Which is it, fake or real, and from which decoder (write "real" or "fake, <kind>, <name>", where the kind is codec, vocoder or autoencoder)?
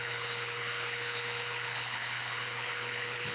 fake, codec, HILCodec